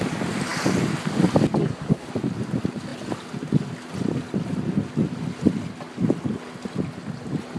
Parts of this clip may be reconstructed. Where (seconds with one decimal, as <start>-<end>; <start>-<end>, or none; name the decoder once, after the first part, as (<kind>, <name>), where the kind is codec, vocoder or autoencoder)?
1.6-2.1 (codec, SNAC)